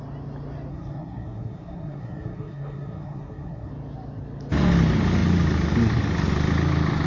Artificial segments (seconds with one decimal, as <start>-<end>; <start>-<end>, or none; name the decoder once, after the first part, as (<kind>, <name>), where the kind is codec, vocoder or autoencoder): 0.7-3.7 (codec, SNAC)